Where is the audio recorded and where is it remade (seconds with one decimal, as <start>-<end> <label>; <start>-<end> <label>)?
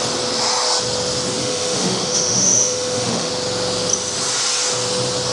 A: 0.0-1.4 recorded; 1.4-3.3 remade; 3.3-5.3 recorded